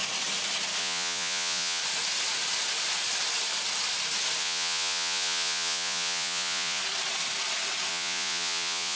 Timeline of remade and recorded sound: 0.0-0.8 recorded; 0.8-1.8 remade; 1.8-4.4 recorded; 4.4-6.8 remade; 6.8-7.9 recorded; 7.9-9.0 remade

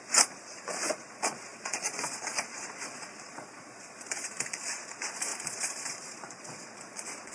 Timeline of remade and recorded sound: 0.0-7.3 remade

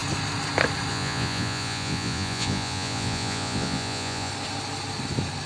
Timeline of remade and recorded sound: 0.0-0.9 recorded; 0.9-4.3 remade; 4.3-5.5 recorded

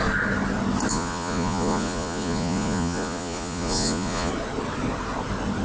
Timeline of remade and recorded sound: 0.0-0.9 recorded; 0.9-4.3 remade; 4.3-5.6 recorded

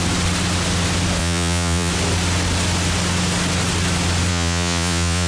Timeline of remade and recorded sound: 0.0-1.2 recorded; 1.2-1.9 remade; 1.9-4.3 recorded; 4.3-5.3 remade

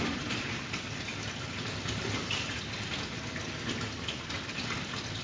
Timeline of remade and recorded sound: 0.0-5.2 recorded

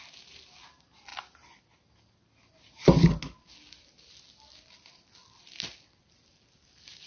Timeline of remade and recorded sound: 0.0-7.1 recorded

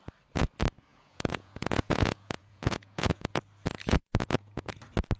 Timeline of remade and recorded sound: 0.0-0.9 recorded; 0.9-3.4 remade; 3.4-3.9 recorded; 3.9-4.7 remade; 4.7-5.2 recorded